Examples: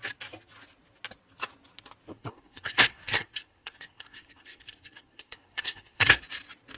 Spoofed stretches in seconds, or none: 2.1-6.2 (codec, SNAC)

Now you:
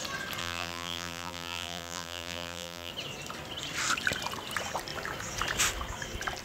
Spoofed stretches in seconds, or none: 0.4-2.9 (vocoder, BigVGAN v2)

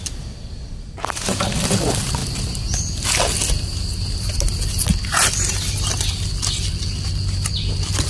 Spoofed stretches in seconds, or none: none